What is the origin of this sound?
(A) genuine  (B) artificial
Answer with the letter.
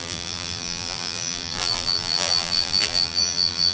B